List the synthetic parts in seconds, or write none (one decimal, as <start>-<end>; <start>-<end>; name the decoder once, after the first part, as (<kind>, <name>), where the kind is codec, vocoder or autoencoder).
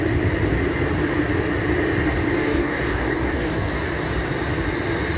2.4-3.7 (codec, DAC)